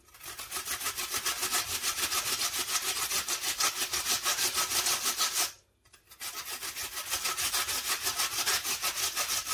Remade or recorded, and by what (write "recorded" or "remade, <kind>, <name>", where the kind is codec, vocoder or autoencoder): recorded